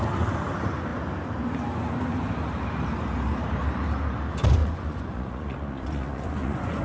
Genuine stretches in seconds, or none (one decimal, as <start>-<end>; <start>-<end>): 0.0-4.6